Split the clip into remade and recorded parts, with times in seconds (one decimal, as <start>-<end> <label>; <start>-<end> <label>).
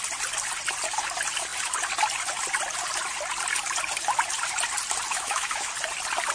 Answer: 0.0-5.1 recorded; 5.1-5.7 remade; 5.7-6.3 recorded